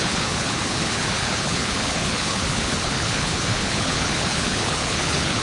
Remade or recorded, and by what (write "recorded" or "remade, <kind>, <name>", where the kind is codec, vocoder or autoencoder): remade, codec, HILCodec